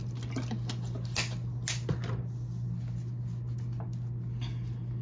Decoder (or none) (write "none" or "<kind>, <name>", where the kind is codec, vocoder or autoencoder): none